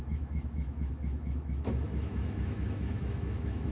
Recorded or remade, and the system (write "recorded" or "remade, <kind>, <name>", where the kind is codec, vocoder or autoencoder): remade, autoencoder, DAC-VAE